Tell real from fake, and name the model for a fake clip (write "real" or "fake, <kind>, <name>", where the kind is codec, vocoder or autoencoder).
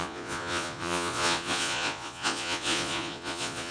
fake, vocoder, Vocos